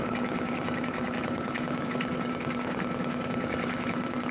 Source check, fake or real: fake